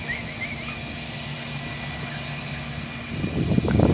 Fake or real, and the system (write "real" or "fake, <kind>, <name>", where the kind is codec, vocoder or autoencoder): real